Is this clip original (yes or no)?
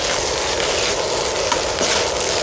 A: yes